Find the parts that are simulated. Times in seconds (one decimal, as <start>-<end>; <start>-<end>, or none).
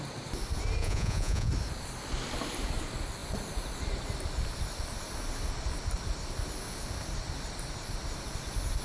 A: 0.8-1.5